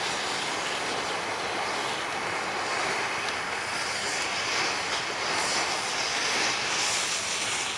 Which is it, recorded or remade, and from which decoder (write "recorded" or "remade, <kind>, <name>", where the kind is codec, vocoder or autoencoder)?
recorded